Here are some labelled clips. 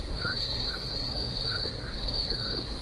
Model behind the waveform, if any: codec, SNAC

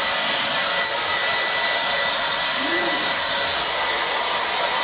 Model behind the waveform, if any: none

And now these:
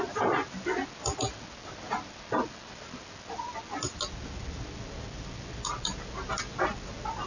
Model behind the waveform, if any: none